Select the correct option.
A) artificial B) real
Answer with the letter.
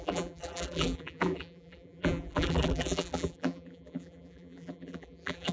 A